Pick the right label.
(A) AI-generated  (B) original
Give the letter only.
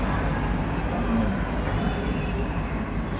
B